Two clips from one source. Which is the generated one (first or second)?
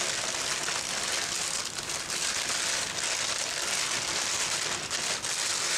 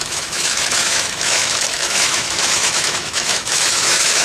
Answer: second